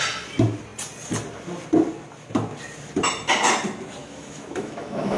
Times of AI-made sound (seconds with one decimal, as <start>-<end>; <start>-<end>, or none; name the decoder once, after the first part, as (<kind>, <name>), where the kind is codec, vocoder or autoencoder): 4.0-5.2 (autoencoder, DAC-VAE)